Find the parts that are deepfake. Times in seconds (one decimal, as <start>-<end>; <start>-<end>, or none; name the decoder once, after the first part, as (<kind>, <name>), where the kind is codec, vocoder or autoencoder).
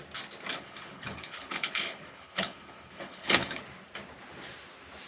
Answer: 0.5-3.6 (codec, HILCodec)